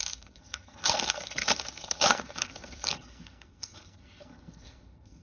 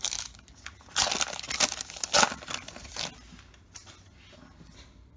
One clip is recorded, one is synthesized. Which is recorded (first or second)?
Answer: second